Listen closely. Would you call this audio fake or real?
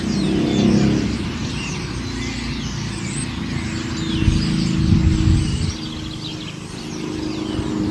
real